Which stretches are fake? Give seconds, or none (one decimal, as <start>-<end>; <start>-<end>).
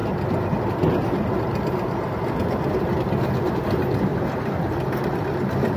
4.1-4.7